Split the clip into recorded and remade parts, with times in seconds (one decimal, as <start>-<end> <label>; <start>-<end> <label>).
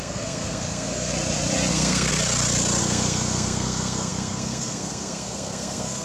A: 0.0-1.1 remade; 1.1-1.7 recorded; 1.7-2.1 remade; 2.1-2.8 recorded; 2.8-6.0 remade